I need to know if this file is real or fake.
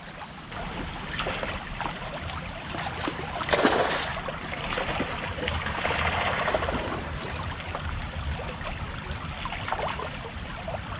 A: real